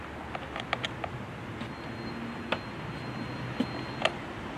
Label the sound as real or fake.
real